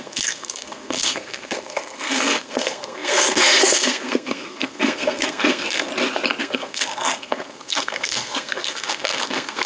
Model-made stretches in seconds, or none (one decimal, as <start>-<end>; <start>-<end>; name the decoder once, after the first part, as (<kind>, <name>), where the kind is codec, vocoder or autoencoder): 0.0-5.9 (codec, SNAC); 6.4-9.7